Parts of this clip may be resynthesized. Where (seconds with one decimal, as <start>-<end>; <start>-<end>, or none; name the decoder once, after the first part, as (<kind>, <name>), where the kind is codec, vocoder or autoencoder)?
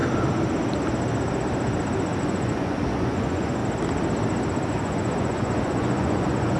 2.2-3.6 (vocoder, Vocos); 4.7-6.6